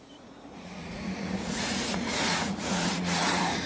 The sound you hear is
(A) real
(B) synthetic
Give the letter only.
B